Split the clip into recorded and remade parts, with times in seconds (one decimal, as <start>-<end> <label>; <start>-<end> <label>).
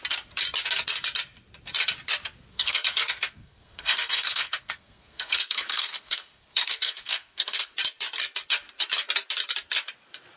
0.0-2.5 recorded; 2.5-7.7 remade; 7.7-10.4 recorded